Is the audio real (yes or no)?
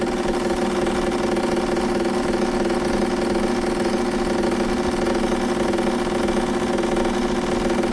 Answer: yes